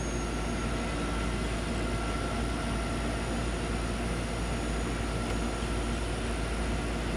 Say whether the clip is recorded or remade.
recorded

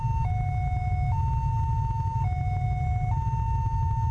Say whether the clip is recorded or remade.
recorded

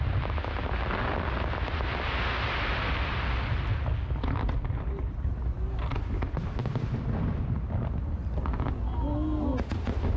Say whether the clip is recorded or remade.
recorded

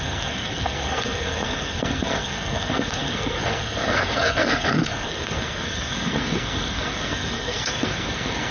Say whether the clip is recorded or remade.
remade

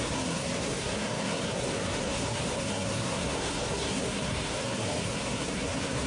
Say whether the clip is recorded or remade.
remade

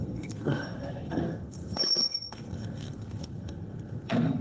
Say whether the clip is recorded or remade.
remade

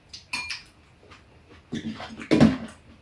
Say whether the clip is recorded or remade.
recorded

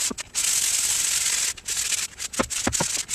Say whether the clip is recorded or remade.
recorded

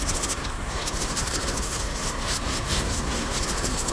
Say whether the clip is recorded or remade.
remade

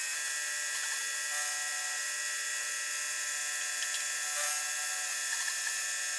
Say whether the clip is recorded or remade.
recorded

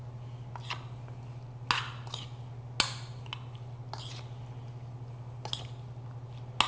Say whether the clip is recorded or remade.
recorded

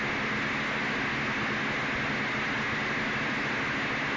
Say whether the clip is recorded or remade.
recorded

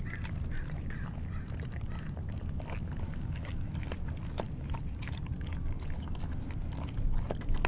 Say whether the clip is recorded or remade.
recorded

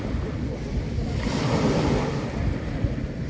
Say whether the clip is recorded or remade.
recorded